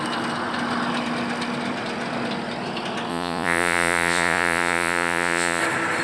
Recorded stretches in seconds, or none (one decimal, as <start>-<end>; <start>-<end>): 0.0-3.1; 5.6-6.0